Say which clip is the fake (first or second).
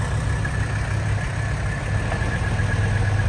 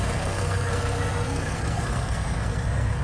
second